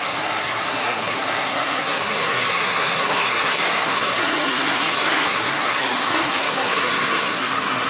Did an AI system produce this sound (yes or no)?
yes